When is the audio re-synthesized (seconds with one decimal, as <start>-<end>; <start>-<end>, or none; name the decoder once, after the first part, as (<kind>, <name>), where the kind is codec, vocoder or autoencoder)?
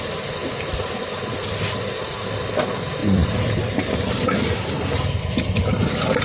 0.4-1.7 (vocoder, BigVGAN v2); 3.0-4.4; 5.6-6.2